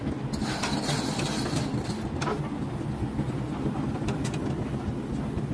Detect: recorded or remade recorded